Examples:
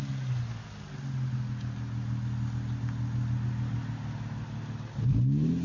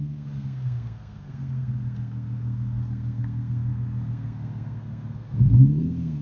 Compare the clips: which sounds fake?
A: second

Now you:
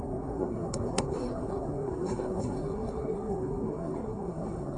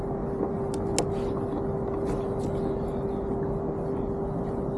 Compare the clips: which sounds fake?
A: first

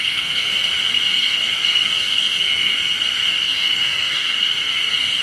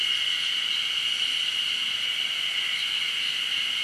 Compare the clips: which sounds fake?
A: first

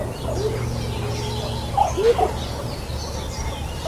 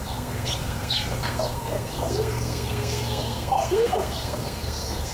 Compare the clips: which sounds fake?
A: second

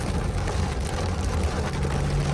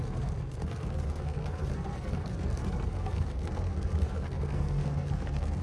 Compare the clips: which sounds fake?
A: second